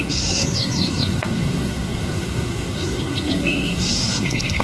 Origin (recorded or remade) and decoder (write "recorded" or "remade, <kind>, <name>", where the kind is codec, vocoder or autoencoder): remade, codec, SNAC